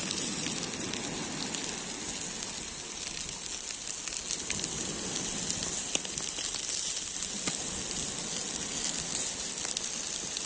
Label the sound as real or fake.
real